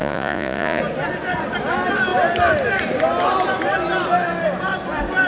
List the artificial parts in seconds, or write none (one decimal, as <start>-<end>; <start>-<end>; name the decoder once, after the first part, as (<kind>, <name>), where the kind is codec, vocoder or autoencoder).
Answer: 0.0-0.8 (vocoder, Vocos)